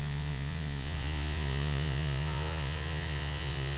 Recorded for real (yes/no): no